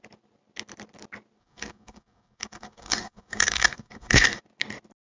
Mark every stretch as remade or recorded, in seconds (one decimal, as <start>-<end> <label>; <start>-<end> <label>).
0.0-1.4 recorded; 1.4-4.4 remade; 4.4-5.0 recorded